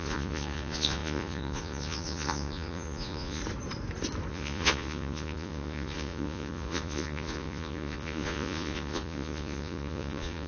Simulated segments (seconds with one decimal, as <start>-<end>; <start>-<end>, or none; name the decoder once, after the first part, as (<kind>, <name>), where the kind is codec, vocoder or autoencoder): 0.0-3.4 (vocoder, Vocos); 4.3-10.5